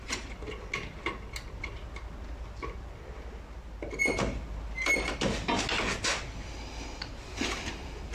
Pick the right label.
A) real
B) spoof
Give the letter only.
A